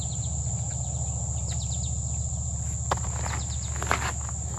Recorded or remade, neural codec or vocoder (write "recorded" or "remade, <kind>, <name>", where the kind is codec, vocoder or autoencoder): recorded